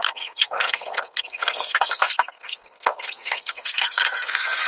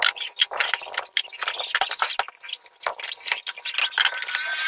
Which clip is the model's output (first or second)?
first